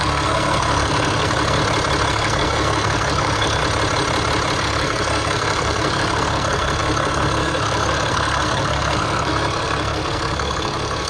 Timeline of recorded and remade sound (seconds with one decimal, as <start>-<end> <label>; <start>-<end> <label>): 0.0-1.6 remade; 1.6-2.1 recorded; 2.1-3.6 remade; 3.6-4.6 recorded; 4.6-11.1 remade